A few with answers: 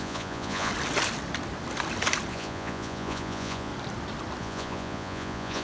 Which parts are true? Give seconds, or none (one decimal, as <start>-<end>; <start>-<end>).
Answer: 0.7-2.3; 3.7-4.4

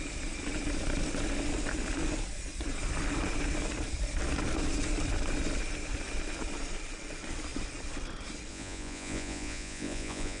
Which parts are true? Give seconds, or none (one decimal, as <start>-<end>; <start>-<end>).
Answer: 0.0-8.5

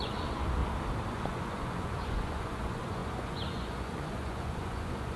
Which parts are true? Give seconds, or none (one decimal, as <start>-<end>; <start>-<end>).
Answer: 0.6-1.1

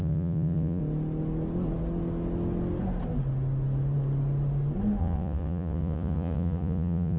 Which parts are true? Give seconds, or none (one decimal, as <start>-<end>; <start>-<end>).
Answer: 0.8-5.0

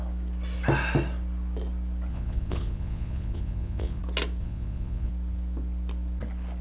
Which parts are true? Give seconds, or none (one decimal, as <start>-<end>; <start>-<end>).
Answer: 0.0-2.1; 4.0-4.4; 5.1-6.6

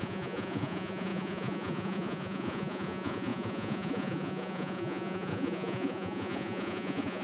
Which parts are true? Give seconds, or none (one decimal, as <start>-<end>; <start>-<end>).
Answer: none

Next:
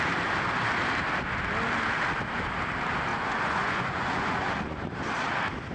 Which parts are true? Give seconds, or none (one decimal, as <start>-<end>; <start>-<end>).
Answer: 0.0-3.1; 4.9-5.7

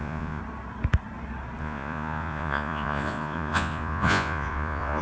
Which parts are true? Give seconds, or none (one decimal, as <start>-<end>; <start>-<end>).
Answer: 0.4-1.6